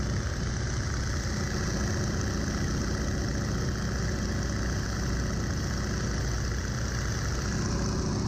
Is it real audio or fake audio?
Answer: real